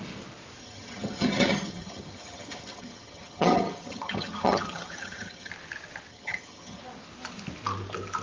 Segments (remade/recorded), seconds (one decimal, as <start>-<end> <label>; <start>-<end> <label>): 0.0-0.6 recorded; 0.6-5.5 remade; 5.5-6.1 recorded; 6.1-6.8 remade; 6.8-8.2 recorded